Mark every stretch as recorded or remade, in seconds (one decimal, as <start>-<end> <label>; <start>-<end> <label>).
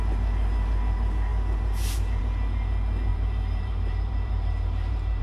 0.0-3.1 recorded; 3.1-5.2 remade